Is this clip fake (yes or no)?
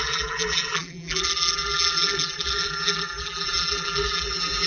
yes